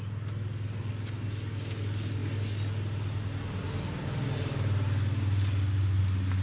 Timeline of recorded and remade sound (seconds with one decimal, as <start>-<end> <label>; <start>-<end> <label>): 0.0-6.4 recorded